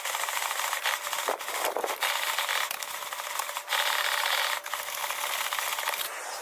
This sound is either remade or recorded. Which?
recorded